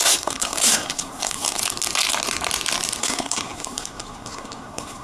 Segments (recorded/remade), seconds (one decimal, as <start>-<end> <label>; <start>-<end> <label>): 0.0-1.6 remade; 1.6-3.0 recorded; 3.0-5.0 remade